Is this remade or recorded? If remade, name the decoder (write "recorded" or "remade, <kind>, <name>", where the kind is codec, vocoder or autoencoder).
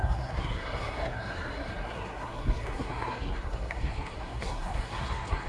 remade, codec, SNAC